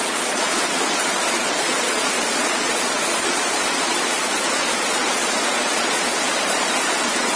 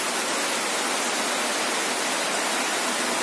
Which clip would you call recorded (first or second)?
second